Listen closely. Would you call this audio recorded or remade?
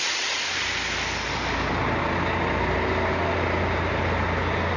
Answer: recorded